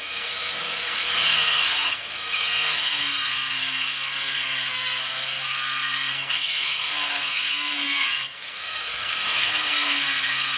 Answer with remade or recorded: remade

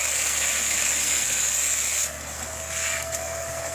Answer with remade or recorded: remade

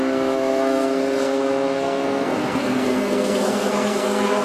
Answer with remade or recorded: remade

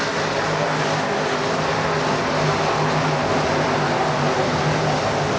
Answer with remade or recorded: recorded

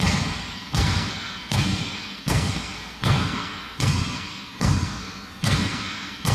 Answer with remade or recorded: remade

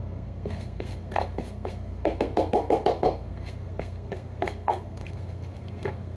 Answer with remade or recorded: remade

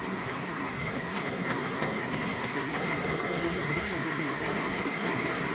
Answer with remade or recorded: remade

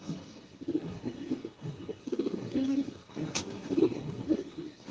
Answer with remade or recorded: remade